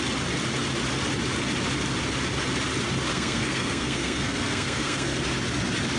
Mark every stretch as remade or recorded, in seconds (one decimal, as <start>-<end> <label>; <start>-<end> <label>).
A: 0.0-3.1 recorded; 3.1-5.2 remade; 5.2-6.0 recorded